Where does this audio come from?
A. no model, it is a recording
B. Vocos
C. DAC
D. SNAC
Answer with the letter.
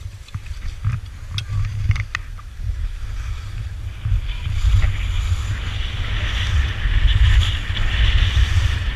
A